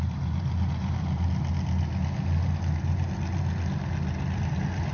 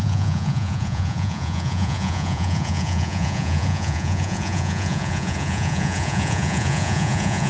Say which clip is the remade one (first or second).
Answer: second